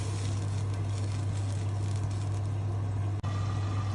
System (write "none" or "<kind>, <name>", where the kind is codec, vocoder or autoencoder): none